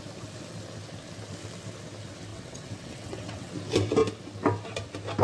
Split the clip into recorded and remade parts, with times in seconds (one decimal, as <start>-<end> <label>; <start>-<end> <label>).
0.0-2.3 recorded; 2.3-3.5 remade; 3.5-5.2 recorded